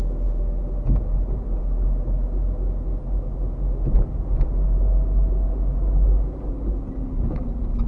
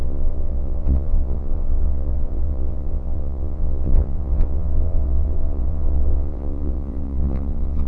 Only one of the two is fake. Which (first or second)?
second